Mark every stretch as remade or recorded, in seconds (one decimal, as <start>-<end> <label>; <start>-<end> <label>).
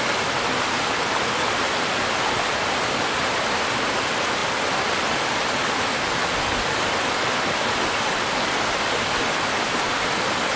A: 0.0-10.6 recorded